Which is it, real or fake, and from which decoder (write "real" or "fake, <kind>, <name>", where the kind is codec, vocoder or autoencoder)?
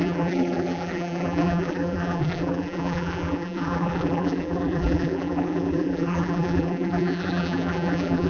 fake, vocoder, BigVGAN v2